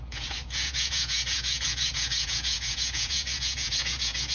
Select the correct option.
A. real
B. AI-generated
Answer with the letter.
B